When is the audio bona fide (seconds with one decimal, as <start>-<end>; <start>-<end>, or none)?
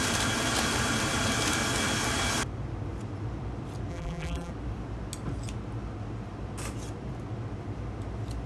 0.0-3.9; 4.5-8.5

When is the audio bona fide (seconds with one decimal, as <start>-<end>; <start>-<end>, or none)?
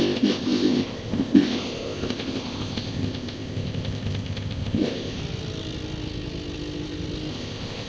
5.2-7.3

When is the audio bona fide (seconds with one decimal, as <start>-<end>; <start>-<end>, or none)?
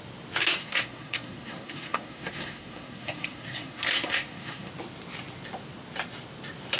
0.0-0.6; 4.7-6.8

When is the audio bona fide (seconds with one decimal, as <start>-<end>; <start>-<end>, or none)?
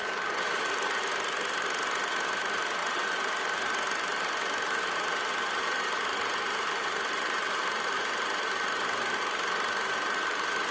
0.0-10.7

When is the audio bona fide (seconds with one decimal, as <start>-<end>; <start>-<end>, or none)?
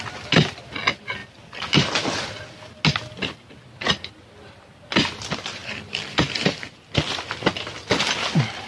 0.0-8.7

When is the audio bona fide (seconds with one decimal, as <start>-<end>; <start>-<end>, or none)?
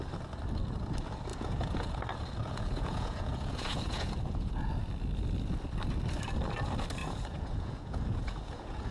0.0-1.3; 1.9-2.4; 4.8-7.0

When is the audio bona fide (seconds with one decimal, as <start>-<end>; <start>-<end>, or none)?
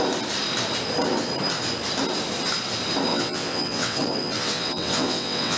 0.0-3.1